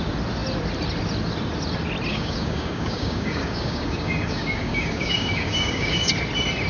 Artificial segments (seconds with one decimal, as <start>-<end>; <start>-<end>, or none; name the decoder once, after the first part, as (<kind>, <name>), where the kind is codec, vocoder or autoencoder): 2.1-6.1 (codec, DAC)